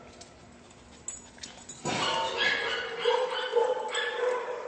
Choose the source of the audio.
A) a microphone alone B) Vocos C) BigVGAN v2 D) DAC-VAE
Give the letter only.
A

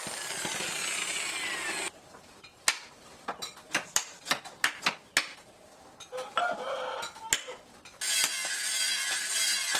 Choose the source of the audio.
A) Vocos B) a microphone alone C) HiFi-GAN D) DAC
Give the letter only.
B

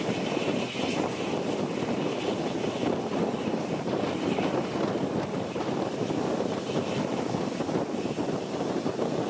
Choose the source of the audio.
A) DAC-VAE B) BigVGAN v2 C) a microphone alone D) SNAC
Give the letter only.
C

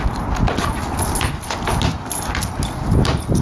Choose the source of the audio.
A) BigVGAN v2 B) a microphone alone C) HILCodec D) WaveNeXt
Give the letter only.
B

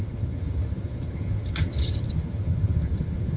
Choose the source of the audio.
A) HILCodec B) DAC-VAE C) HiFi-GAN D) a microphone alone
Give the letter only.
C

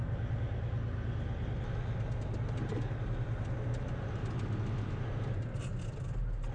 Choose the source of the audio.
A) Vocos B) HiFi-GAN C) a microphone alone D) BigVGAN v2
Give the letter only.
C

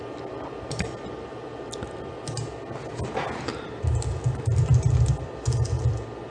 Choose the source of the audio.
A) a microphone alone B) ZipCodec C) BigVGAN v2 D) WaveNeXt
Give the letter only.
A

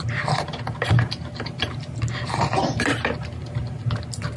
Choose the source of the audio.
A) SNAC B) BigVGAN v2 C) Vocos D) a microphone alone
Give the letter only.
D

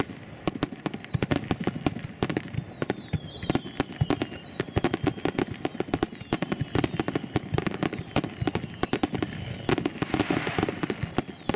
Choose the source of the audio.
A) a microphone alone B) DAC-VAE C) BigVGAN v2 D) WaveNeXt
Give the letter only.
A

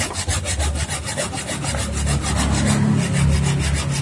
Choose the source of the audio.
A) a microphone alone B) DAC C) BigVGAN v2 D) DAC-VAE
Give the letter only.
A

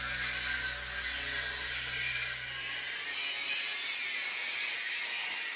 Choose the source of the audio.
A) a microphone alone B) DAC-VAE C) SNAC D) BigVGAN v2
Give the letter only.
D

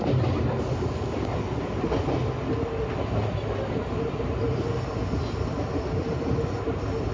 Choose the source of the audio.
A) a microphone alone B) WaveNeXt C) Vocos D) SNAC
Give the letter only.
A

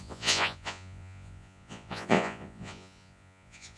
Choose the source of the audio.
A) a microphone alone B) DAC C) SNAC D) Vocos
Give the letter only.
D